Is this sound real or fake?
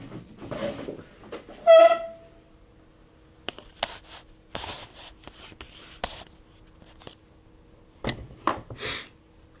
real